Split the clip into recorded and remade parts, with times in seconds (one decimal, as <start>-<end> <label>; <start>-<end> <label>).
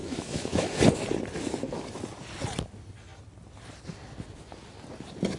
0.0-0.8 remade; 0.8-5.4 recorded